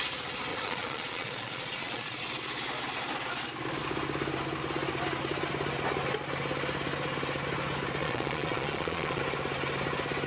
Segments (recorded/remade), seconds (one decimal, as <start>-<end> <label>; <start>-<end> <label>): 0.0-0.5 recorded; 0.5-2.2 remade; 2.2-8.0 recorded; 8.0-9.2 remade; 9.2-10.3 recorded